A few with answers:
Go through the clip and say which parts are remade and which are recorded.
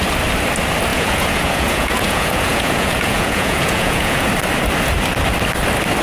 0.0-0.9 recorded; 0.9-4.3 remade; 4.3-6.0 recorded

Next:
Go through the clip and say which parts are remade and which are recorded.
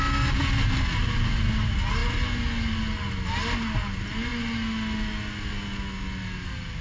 0.0-6.8 recorded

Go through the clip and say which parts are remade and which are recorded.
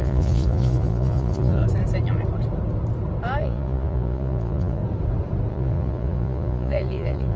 0.0-1.6 remade; 1.6-3.4 recorded; 3.4-4.8 remade; 4.8-5.5 recorded; 5.5-7.4 remade